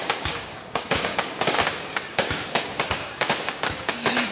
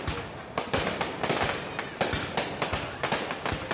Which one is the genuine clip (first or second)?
second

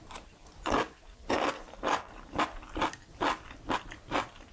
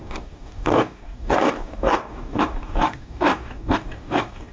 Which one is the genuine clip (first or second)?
first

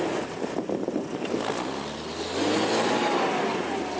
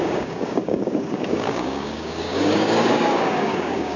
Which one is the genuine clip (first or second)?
first